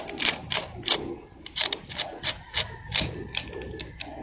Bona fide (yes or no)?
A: yes